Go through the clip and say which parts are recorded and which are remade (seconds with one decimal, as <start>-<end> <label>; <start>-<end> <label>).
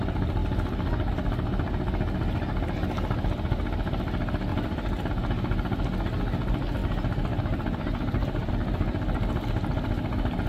0.0-4.5 recorded; 4.5-5.1 remade; 5.1-6.8 recorded; 6.8-8.5 remade; 8.5-10.5 recorded